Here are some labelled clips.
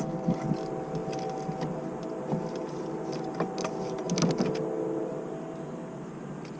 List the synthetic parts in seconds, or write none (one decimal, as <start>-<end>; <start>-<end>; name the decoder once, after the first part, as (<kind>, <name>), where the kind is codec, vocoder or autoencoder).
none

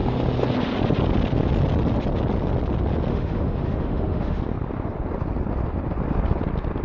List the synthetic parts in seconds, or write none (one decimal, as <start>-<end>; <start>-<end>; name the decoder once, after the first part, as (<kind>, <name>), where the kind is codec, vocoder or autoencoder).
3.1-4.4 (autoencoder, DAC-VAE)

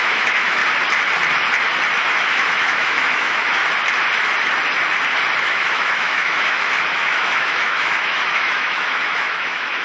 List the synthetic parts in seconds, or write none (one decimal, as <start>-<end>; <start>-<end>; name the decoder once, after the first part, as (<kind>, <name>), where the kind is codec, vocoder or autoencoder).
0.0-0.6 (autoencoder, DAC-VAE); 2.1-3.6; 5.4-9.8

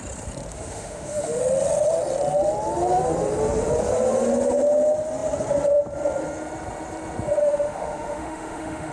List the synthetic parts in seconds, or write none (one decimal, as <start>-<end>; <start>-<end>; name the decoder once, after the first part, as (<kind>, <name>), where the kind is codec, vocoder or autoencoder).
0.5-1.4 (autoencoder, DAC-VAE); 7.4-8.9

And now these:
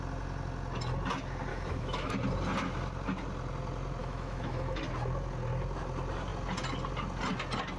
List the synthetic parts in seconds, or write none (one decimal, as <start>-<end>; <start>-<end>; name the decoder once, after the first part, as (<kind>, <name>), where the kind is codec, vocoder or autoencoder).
1.5-2.1 (autoencoder, DAC-VAE); 4.0-4.8

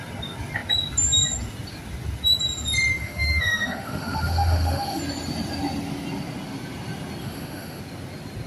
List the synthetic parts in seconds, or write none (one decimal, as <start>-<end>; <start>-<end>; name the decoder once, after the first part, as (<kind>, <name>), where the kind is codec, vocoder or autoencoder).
2.9-5.0 (autoencoder, DAC-VAE); 7.2-7.8